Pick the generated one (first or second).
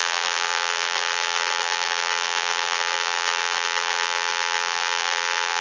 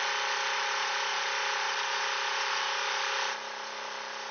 first